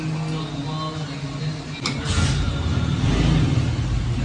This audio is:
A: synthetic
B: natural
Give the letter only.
B